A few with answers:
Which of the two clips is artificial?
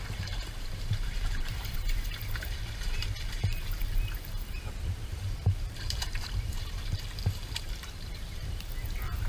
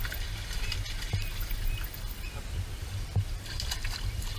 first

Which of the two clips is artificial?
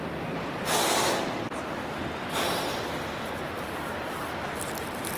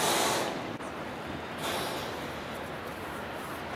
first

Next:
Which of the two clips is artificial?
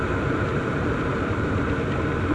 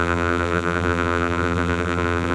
second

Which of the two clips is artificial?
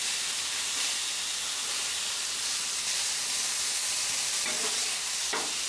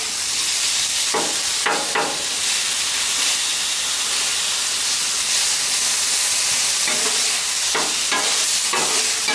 first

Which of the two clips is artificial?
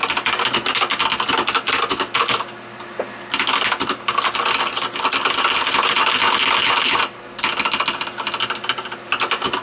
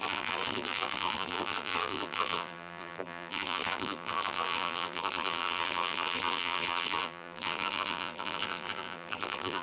second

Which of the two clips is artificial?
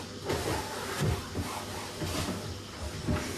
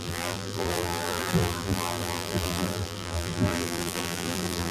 second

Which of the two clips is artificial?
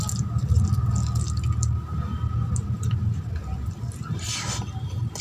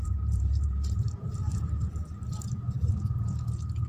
second